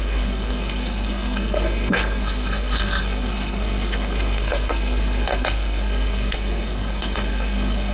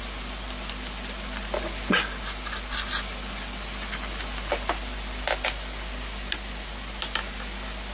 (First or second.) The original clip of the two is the second